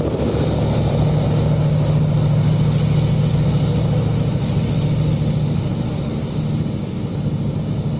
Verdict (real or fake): real